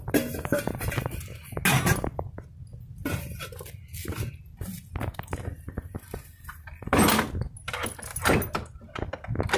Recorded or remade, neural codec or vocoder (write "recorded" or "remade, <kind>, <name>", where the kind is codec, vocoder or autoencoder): recorded